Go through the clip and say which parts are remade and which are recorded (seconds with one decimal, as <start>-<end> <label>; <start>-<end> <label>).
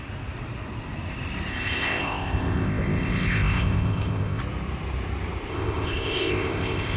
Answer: 0.0-1.5 recorded; 1.5-4.4 remade; 4.4-5.5 recorded; 5.5-7.0 remade